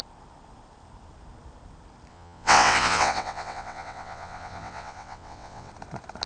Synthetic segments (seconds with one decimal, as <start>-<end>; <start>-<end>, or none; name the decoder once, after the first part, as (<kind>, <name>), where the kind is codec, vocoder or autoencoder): 2.1-5.7 (vocoder, WaveNeXt)